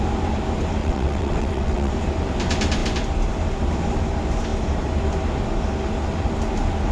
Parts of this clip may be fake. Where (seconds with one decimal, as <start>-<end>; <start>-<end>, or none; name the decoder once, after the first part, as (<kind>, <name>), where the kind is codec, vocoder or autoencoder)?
0.8-1.9 (vocoder, WaveNeXt)